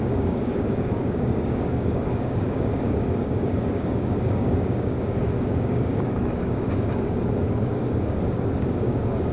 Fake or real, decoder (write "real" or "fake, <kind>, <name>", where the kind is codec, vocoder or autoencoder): fake, codec, DAC